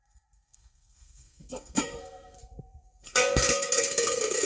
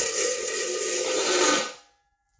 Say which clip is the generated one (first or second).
first